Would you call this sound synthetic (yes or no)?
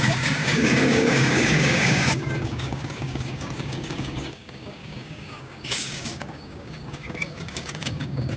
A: yes